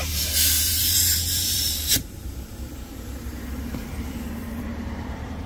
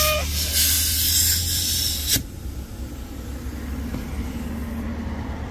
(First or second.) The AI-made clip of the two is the first